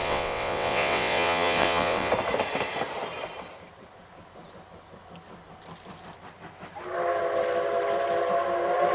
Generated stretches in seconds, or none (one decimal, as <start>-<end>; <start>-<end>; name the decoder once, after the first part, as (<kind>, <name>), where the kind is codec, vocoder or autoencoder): 0.0-2.1 (vocoder, WaveNeXt)